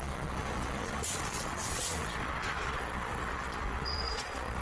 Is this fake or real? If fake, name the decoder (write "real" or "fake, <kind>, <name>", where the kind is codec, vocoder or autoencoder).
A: fake, vocoder, Vocos